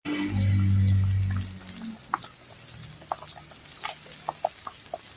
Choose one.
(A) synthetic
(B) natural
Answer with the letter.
B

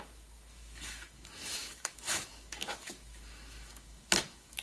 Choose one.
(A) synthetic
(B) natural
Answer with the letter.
A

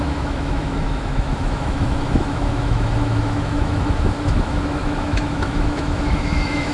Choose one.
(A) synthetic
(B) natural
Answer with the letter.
A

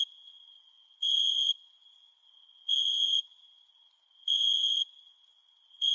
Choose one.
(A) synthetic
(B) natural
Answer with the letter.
A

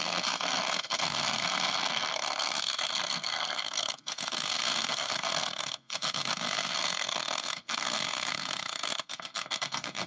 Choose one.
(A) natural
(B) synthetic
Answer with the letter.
B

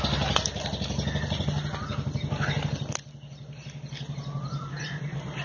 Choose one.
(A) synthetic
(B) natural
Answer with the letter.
B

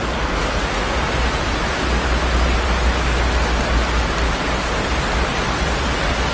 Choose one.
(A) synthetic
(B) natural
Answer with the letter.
B